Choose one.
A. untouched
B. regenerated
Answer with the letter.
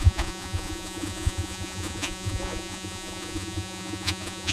B